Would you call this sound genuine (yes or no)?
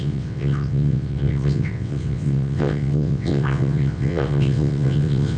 no